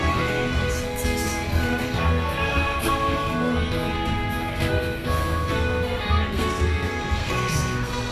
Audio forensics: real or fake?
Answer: fake